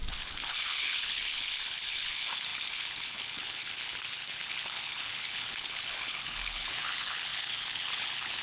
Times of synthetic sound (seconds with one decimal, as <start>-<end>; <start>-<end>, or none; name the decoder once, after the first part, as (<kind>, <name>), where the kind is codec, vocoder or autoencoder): 0.0-8.4 (codec, HILCodec)